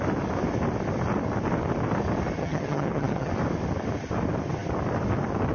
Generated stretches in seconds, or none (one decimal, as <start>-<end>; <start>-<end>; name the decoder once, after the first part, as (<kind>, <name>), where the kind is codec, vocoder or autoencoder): 2.4-3.3 (vocoder, HiFi-GAN)